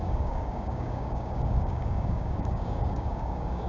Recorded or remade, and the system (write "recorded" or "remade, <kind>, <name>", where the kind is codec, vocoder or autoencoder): remade, codec, DAC